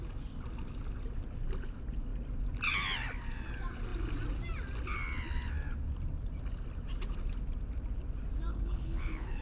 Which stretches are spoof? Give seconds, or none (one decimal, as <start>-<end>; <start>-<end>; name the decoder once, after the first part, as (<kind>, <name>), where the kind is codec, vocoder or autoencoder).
8.5-9.4 (codec, HILCodec)